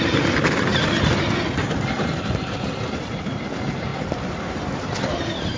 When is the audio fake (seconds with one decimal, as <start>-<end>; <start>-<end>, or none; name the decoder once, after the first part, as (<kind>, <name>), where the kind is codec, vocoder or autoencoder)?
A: none